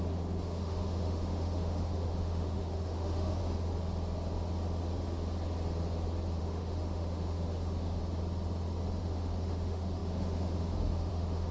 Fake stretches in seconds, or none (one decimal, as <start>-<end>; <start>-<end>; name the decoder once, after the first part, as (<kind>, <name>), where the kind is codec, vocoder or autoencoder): 0.0-3.4 (autoencoder, DAC-VAE); 6.4-8.0; 9.0-11.5